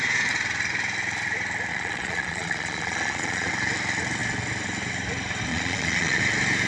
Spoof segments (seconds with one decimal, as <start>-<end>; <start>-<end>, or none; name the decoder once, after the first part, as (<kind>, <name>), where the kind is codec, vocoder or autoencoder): 1.7-3.5 (vocoder, Vocos); 5.5-6.2